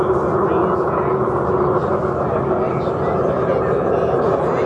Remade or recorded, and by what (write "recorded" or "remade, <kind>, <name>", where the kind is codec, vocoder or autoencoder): recorded